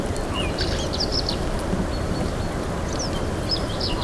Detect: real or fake real